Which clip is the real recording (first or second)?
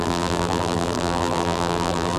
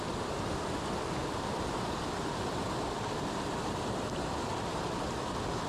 second